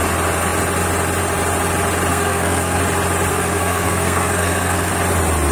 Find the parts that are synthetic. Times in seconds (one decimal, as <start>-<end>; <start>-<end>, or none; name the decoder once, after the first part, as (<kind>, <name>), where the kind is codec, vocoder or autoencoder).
2.1-2.8 (codec, SNAC); 3.3-4.9